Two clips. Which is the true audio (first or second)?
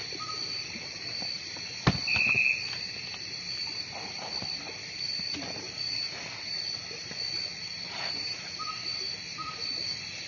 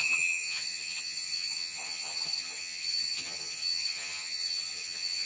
first